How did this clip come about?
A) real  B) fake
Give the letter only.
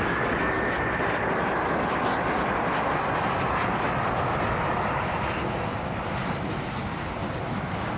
A